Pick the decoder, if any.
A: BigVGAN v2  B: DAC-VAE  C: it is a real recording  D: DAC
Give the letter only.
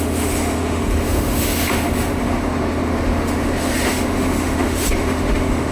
B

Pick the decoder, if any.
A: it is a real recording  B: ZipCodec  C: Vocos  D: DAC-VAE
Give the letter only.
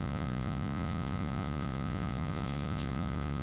C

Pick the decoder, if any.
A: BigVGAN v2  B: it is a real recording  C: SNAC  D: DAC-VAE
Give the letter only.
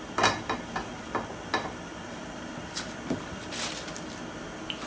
B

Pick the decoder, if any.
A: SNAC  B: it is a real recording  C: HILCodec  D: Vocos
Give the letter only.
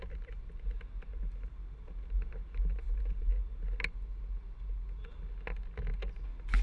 B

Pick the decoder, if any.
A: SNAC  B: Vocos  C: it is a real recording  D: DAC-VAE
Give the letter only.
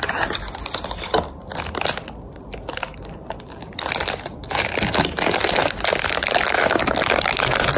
C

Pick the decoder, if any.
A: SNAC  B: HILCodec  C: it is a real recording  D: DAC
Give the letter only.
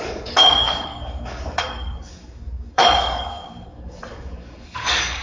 D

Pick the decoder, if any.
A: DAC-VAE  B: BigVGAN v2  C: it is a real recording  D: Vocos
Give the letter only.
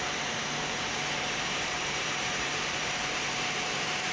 B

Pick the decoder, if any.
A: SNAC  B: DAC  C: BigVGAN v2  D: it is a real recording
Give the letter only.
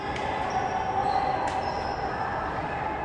D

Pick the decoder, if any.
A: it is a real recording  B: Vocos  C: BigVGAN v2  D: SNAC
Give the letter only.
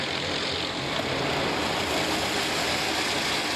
A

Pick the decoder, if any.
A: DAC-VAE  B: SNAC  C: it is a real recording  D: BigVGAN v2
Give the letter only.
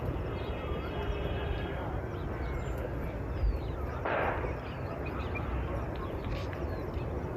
C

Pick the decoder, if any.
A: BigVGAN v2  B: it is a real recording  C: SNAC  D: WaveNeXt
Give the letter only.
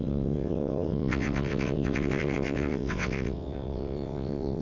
D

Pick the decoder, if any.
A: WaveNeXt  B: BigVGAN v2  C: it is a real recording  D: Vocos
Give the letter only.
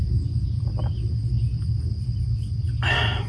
C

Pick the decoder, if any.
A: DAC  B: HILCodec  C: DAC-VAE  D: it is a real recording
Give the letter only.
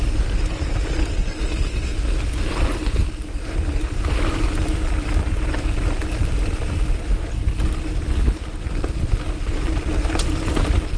D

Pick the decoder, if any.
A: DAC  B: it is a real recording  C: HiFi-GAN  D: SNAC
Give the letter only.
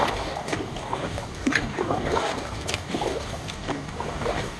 A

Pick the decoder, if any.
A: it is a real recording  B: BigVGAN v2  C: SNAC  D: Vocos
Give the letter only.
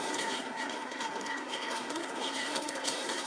C